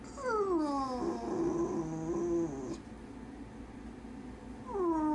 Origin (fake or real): real